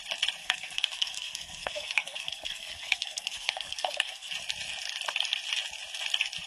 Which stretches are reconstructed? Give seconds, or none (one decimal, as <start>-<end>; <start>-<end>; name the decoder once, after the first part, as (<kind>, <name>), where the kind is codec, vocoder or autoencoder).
0.4-4.3 (codec, SNAC)